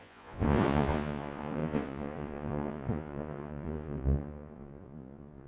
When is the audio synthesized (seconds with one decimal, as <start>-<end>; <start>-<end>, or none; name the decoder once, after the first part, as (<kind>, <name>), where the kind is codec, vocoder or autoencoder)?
0.0-5.5 (vocoder, Vocos)